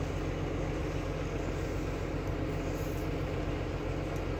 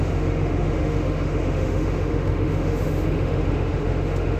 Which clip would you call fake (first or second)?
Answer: second